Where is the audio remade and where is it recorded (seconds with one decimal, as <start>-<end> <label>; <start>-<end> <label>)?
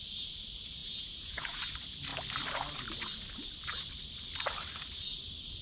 0.0-0.8 recorded; 0.8-1.6 remade; 1.6-5.6 recorded